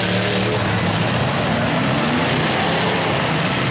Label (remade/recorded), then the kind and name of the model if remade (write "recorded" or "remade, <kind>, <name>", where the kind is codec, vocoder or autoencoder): recorded